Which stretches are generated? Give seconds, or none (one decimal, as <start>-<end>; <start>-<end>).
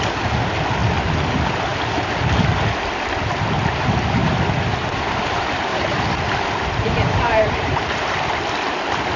5.7-8.0